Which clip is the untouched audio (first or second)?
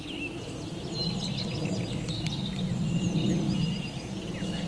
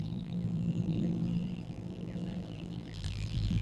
first